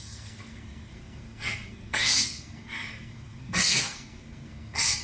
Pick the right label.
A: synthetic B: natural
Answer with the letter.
A